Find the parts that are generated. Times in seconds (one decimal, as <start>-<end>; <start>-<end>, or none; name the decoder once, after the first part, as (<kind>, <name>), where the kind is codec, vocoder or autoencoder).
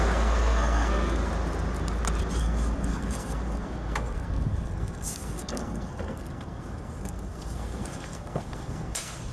0.0-1.3 (codec, SNAC); 2.4-9.3